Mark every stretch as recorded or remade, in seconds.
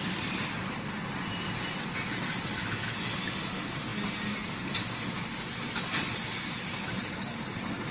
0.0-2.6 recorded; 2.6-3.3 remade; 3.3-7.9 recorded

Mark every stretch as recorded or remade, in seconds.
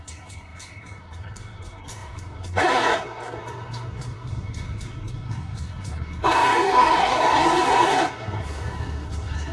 0.0-9.5 remade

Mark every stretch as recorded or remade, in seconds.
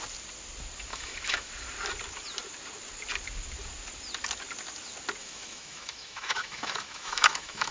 0.0-0.9 recorded; 0.9-1.5 remade; 1.5-5.2 recorded; 5.2-7.7 remade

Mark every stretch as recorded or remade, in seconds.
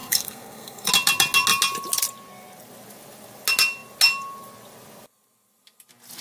0.0-0.9 remade; 0.9-6.2 recorded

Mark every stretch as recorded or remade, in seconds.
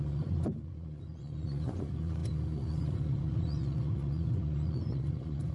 0.0-5.5 remade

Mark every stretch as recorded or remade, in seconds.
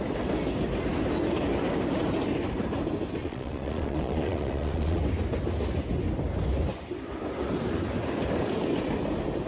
0.0-3.2 recorded; 3.2-5.0 remade; 5.0-9.5 recorded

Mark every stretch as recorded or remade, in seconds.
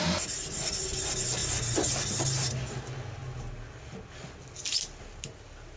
0.0-5.8 recorded